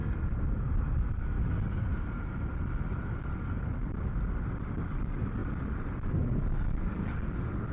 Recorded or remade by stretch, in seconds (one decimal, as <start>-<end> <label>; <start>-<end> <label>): 0.0-1.2 remade; 1.2-7.7 recorded